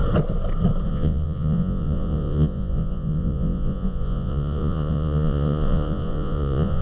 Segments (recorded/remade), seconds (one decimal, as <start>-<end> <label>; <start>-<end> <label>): 0.0-0.9 recorded; 0.9-6.8 remade